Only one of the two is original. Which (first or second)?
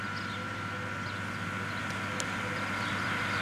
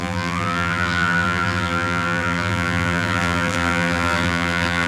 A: first